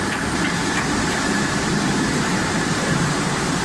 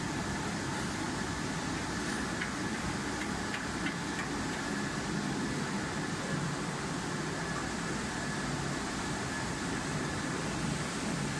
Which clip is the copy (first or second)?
first